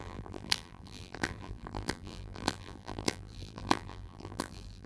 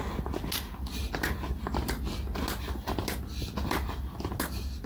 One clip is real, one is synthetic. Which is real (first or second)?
second